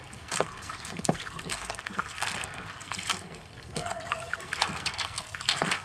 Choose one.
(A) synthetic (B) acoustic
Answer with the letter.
A